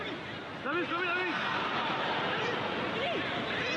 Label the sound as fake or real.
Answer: real